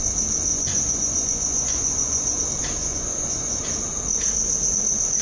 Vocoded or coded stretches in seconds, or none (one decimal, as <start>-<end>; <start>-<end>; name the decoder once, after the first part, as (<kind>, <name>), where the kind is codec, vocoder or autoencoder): 0.5-2.4 (vocoder, Vocos); 2.8-3.6